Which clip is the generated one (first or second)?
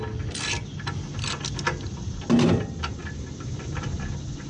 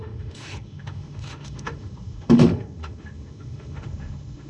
second